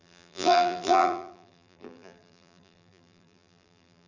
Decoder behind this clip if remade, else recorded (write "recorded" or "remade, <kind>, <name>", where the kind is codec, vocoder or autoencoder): remade, vocoder, BigVGAN v2